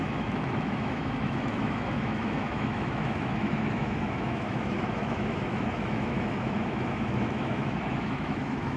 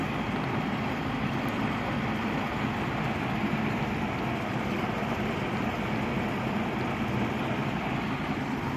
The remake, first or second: first